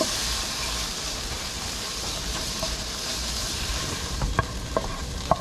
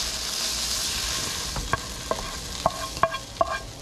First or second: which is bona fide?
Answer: second